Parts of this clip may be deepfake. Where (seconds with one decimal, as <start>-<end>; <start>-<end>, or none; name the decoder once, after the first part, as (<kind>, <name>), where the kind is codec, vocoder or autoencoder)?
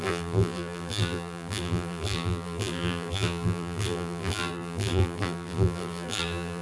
0.0-6.6 (vocoder, BigVGAN v2)